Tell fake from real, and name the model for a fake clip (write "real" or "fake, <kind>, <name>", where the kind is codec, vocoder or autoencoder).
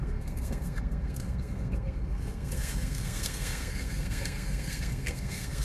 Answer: fake, codec, SNAC